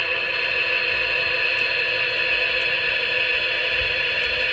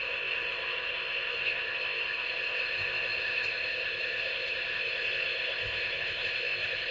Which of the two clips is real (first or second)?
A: first